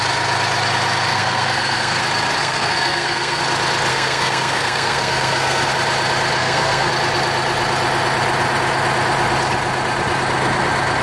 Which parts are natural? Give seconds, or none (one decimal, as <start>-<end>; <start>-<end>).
0.0-1.1; 2.0-2.4; 3.4-3.9; 5.7-6.4; 6.9-11.0